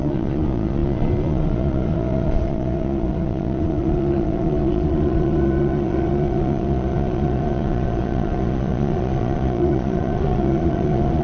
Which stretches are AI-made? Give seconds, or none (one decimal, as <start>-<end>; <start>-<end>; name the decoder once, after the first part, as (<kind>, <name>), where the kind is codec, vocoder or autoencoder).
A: 0.0-11.2 (vocoder, Vocos)